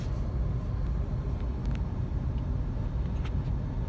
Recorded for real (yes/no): yes